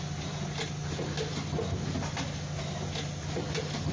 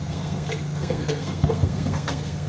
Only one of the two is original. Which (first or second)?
first